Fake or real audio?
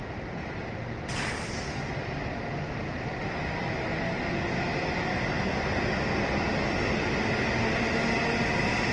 real